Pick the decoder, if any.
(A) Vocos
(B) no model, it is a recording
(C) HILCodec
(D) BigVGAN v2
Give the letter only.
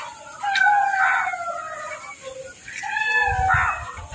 B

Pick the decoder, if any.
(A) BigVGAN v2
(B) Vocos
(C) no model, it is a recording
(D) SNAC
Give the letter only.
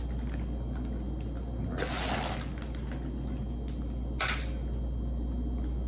C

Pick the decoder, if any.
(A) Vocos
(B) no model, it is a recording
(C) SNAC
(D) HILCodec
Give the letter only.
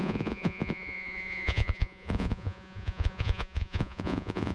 A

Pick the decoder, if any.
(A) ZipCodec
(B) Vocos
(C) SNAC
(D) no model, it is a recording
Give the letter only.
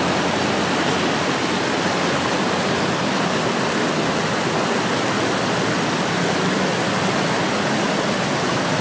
D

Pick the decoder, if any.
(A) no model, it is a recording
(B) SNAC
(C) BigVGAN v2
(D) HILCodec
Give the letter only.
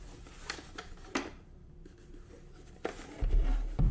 C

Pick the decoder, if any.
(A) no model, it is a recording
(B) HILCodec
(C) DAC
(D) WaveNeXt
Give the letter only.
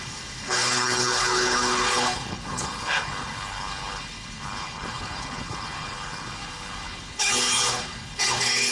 B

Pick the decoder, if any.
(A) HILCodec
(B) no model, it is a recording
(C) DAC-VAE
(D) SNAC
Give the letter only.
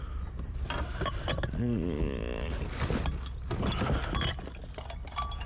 B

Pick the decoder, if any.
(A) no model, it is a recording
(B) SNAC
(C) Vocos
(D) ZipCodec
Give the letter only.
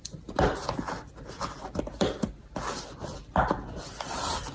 A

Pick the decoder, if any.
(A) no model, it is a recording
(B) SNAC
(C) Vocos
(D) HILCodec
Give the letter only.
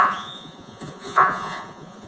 C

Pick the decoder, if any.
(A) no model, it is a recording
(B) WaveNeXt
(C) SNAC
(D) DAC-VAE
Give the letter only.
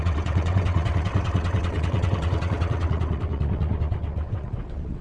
B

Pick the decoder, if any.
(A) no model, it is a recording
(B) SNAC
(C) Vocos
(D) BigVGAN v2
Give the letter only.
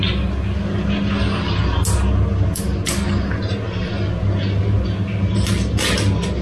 A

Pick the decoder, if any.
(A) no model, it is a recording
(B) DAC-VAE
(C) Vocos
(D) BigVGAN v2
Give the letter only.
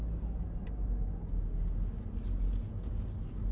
A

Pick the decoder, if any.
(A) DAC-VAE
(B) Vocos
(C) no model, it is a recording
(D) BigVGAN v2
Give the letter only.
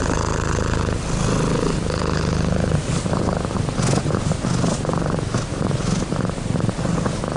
C